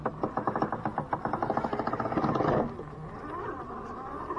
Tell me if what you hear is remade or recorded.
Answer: recorded